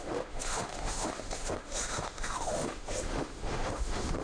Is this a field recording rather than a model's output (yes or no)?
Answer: no